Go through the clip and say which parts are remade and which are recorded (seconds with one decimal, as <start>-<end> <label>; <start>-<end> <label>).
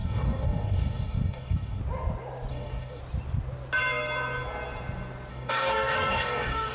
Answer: 0.0-1.8 remade; 1.8-2.5 recorded; 2.5-3.0 remade; 3.0-5.3 recorded; 5.3-6.7 remade